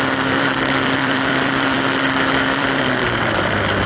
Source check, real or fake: fake